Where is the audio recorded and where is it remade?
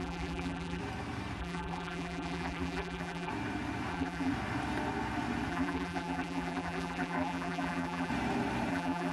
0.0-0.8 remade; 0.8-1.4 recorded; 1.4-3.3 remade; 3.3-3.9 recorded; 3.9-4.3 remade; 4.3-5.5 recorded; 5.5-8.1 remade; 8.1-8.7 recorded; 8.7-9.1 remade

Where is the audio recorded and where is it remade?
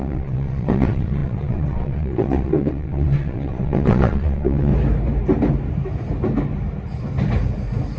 0.0-4.7 remade; 4.7-8.0 recorded